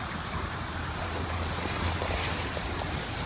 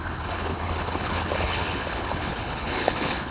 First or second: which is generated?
second